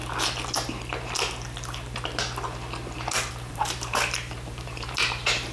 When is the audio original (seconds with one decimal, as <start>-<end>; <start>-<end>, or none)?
0.0-3.3